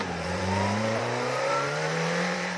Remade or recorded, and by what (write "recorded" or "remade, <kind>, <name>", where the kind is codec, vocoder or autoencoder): remade, vocoder, BigVGAN v2